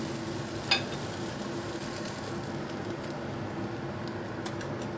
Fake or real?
real